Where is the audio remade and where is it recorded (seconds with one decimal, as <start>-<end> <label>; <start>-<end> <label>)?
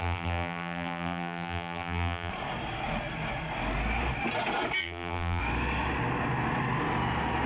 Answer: 0.0-2.3 remade; 2.3-4.8 recorded; 4.8-5.4 remade; 5.4-7.5 recorded